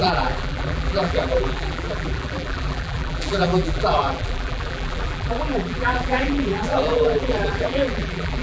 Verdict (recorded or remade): remade